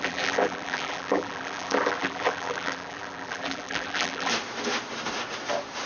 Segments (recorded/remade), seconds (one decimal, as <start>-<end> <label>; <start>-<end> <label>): 0.0-4.3 remade; 4.3-5.9 recorded